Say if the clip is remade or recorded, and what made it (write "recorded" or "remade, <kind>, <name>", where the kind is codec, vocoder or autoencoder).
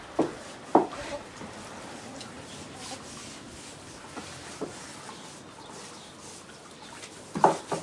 recorded